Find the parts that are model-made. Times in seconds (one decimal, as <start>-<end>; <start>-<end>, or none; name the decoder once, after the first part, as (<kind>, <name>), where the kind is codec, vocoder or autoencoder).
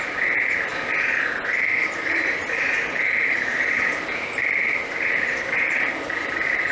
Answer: 0.0-0.7 (vocoder, BigVGAN v2); 1.8-6.7